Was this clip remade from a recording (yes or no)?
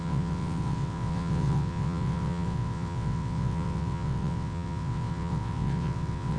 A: yes